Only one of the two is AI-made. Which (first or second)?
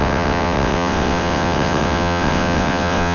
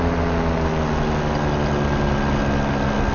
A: first